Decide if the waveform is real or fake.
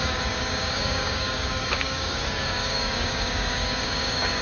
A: fake